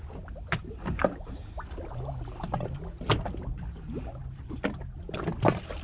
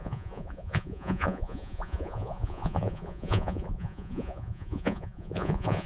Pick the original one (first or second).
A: first